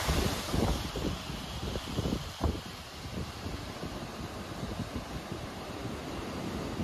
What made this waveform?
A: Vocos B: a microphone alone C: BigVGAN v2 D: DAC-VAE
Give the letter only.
B